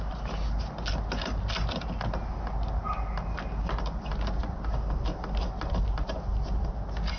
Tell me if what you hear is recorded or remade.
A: recorded